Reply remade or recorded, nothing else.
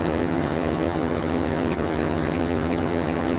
remade